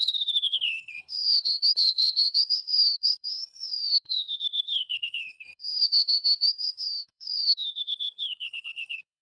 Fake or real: fake